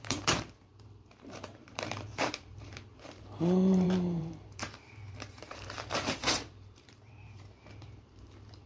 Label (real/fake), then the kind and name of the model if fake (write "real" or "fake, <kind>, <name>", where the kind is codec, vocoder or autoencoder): fake, vocoder, BigVGAN v2